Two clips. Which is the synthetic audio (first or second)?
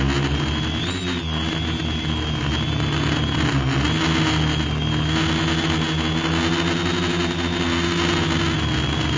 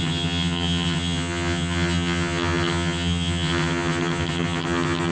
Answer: second